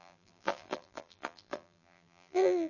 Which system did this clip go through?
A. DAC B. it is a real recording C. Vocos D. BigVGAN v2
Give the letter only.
D